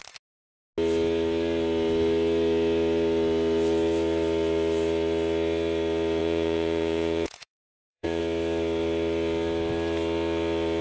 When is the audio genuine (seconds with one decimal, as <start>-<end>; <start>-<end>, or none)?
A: 0.0-6.2; 8.2-10.8